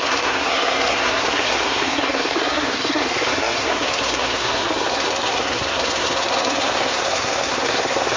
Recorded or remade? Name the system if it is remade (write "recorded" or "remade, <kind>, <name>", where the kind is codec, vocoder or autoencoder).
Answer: remade, codec, SNAC